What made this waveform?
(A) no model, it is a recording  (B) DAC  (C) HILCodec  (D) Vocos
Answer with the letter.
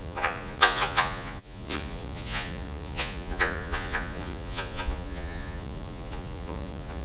D